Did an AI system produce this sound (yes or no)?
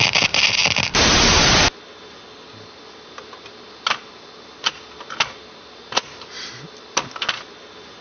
no